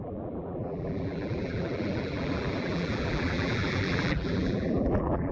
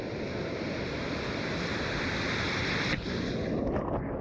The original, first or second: second